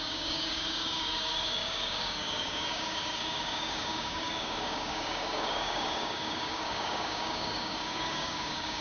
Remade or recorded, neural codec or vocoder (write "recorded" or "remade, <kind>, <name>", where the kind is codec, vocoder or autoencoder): remade, codec, DAC